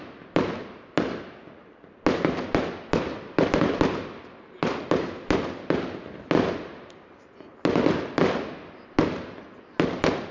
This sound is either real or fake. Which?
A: real